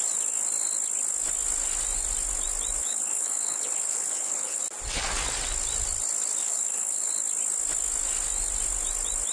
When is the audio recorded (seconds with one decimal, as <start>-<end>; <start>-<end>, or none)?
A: 0.0-2.8; 4.6-6.4; 7.1-9.3